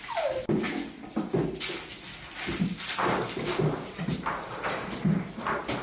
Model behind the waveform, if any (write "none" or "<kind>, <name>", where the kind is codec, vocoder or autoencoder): none